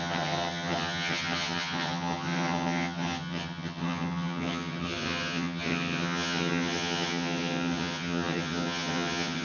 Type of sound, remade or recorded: remade